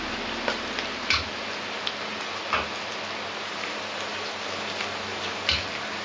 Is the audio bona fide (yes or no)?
yes